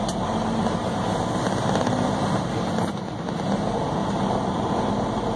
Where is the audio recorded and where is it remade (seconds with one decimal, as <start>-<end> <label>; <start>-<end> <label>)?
0.0-4.0 recorded; 4.0-4.8 remade; 4.8-5.4 recorded